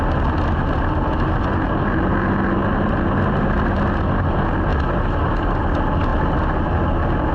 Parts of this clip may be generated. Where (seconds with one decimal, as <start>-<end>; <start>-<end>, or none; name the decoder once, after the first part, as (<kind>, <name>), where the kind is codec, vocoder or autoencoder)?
none